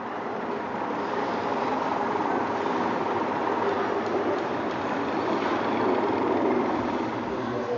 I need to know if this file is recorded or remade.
recorded